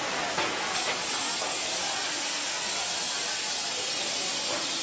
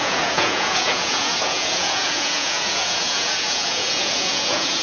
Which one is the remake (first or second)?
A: second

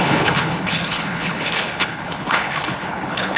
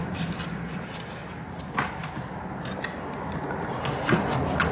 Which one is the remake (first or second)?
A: first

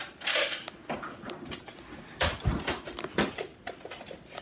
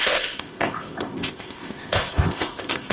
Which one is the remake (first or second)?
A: second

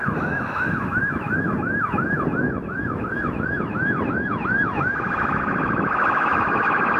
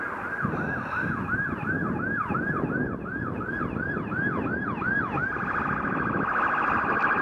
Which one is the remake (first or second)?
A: first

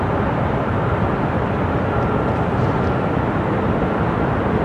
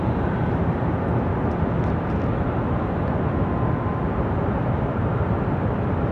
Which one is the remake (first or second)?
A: first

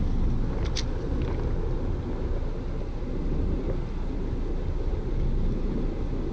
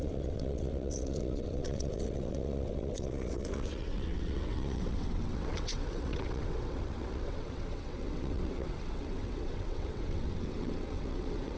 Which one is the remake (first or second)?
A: second